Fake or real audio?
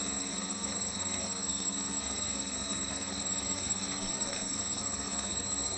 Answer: fake